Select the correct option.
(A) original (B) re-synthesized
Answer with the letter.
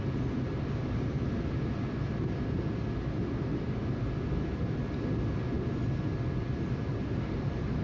A